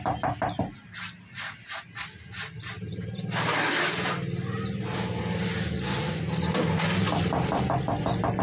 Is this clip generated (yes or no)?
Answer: no